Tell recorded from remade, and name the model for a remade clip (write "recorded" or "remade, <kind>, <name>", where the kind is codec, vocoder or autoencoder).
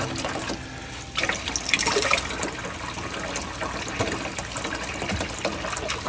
recorded